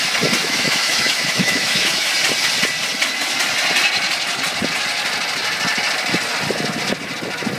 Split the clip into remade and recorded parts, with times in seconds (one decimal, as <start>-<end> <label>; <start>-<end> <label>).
0.0-0.4 recorded; 0.4-2.1 remade; 2.1-7.6 recorded